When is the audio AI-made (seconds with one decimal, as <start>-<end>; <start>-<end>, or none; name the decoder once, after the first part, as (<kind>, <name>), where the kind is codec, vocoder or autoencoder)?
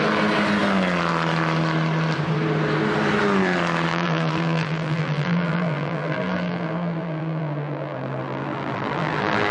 3.9-9.5 (vocoder, BigVGAN v2)